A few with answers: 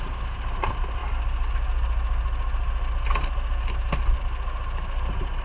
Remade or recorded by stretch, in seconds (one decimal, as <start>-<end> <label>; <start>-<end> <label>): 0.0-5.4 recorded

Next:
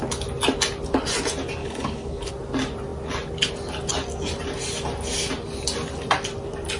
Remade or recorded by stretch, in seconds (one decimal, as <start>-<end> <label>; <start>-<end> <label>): 0.0-1.6 recorded; 1.6-2.3 remade; 2.3-6.8 recorded

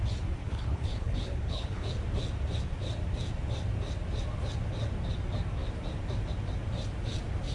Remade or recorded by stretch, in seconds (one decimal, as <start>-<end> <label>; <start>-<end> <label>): 0.0-0.4 recorded; 0.4-1.9 remade; 1.9-7.5 recorded

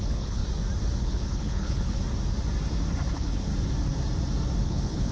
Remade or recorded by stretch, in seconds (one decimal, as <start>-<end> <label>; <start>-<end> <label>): 0.0-0.4 remade; 0.4-1.0 recorded; 1.0-2.0 remade; 2.0-3.1 recorded; 3.1-3.5 remade; 3.5-4.6 recorded; 4.6-5.1 remade